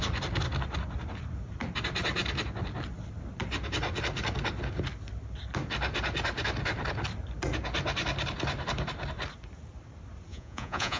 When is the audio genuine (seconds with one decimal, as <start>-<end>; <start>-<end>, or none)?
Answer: 0.0-10.3